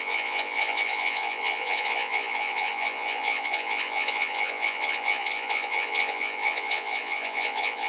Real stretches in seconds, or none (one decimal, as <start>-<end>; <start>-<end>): none